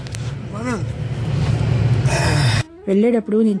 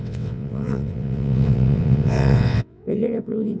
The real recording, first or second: first